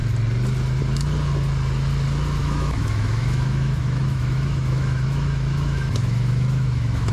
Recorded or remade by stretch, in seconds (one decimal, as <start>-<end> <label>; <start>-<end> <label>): 0.0-2.4 recorded; 2.4-7.1 remade